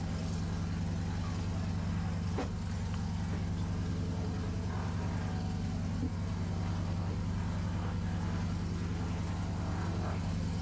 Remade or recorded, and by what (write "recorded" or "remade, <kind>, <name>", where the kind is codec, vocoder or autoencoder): recorded